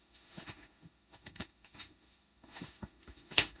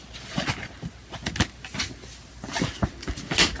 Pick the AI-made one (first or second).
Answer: first